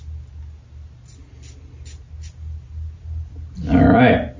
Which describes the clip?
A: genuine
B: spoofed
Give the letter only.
A